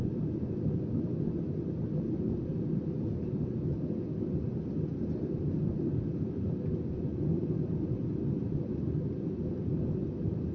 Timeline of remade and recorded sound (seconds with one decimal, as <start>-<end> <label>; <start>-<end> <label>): 0.0-10.5 recorded